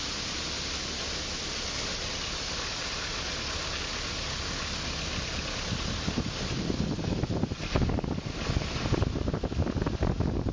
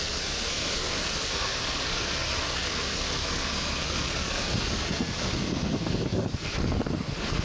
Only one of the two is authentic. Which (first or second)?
first